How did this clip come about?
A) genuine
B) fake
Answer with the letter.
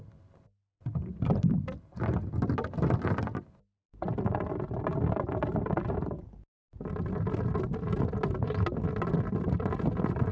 A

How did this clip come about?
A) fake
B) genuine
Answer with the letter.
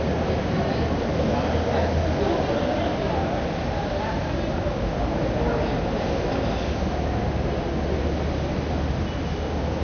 B